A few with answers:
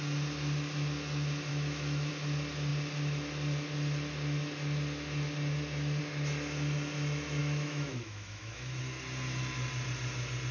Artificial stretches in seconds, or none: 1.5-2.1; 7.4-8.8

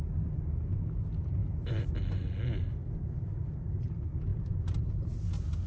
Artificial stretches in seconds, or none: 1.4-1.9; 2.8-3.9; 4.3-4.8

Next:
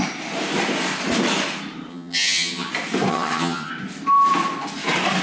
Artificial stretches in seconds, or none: 1.9-2.7; 3.1-3.7